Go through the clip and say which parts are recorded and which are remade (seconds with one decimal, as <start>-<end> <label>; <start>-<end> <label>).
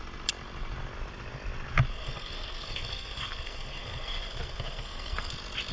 0.0-1.9 recorded; 1.9-5.3 remade; 5.3-5.7 recorded